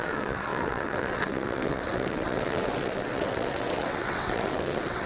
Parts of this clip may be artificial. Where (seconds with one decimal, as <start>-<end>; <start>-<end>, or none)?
0.0-5.1